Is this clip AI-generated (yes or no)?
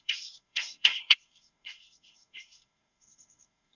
yes